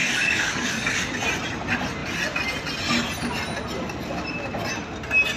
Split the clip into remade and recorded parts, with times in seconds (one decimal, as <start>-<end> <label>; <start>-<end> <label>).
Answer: 0.0-1.1 remade; 1.1-5.4 recorded